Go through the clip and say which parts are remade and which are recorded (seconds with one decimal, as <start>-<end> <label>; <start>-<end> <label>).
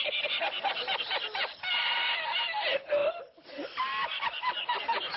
0.0-5.2 recorded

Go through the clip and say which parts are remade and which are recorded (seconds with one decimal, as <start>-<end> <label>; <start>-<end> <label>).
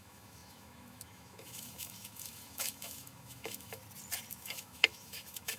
0.0-3.8 remade; 3.8-4.3 recorded; 4.3-5.6 remade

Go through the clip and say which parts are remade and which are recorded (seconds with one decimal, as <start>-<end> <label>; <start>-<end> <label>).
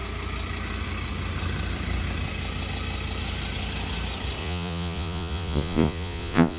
0.0-4.4 recorded; 4.4-6.6 remade